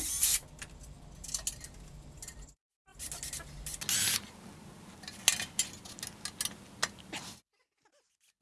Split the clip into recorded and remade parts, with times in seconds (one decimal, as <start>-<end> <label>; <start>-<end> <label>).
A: 0.0-8.4 recorded